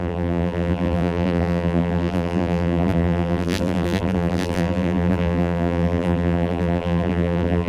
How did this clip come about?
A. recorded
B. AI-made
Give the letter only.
B